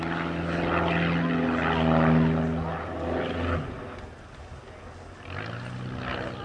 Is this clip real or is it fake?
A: real